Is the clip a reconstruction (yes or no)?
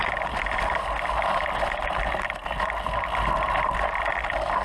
no